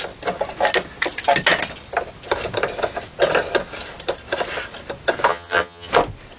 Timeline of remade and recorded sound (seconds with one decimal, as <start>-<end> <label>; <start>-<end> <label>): 0.0-5.3 recorded; 5.3-5.9 remade; 5.9-6.4 recorded